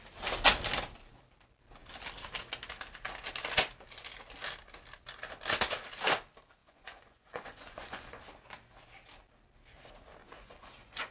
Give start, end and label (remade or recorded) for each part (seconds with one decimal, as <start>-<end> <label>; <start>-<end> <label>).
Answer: 0.0-6.6 recorded; 6.6-8.2 remade; 8.2-10.2 recorded; 10.2-11.1 remade